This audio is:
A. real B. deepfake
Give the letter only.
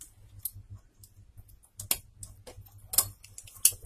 A